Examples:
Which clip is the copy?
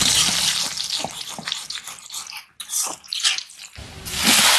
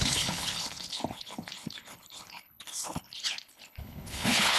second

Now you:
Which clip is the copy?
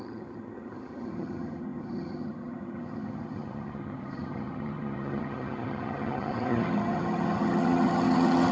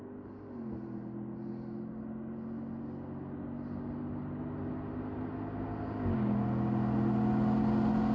first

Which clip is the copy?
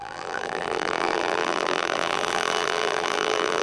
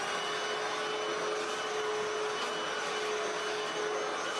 first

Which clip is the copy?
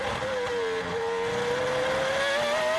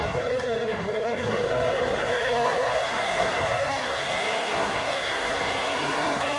second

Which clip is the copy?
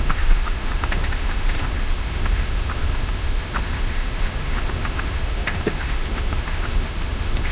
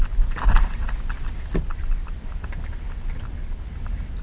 first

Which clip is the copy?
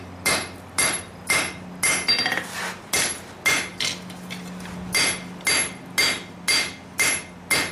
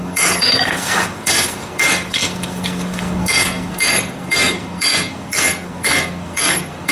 second